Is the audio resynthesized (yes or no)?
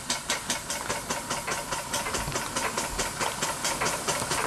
no